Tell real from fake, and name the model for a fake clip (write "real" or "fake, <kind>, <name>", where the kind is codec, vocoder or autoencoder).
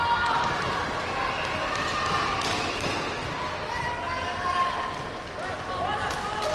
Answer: real